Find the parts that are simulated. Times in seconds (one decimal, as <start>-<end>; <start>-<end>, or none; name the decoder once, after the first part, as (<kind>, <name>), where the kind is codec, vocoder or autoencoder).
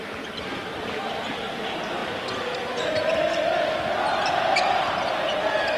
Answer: none